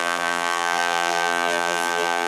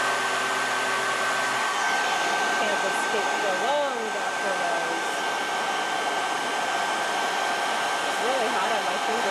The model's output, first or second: first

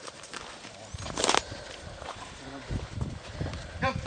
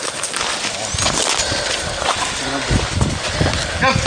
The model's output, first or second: first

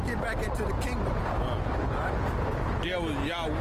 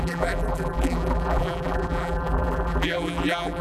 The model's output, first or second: second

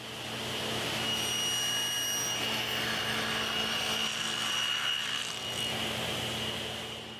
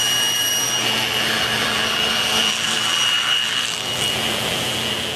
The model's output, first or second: second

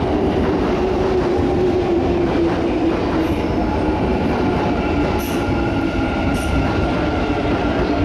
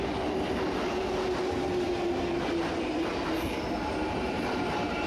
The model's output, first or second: first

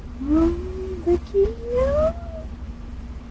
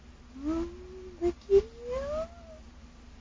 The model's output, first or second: first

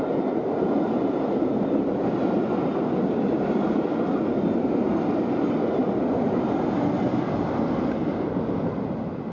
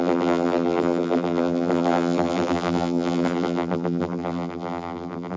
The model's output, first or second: second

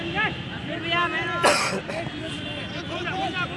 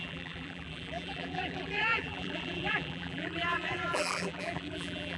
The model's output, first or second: second